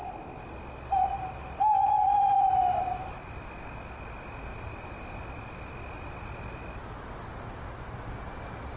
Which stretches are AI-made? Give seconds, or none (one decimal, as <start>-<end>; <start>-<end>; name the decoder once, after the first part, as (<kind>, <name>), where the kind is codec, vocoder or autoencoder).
none